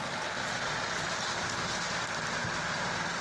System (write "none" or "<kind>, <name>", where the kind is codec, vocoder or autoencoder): none